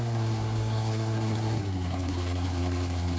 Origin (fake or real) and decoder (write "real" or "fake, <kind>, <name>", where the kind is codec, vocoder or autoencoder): fake, codec, SNAC